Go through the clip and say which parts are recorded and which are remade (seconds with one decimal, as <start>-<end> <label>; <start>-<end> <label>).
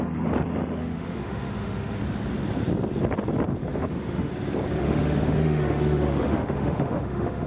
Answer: 0.0-0.8 recorded; 0.8-2.0 remade; 2.0-3.7 recorded; 3.7-4.3 remade; 4.3-4.8 recorded; 4.8-7.5 remade